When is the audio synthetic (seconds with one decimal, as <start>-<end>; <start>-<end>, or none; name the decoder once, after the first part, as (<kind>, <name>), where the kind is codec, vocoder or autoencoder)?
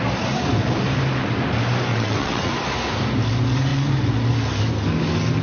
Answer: 1.9-2.5 (vocoder, WaveNeXt)